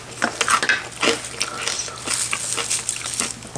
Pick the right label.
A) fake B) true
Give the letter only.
B